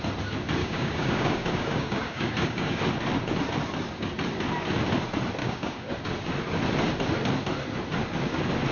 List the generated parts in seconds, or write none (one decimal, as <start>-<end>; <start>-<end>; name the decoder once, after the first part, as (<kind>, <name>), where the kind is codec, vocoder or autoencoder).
0.6-2.8 (codec, DAC); 5.4-5.9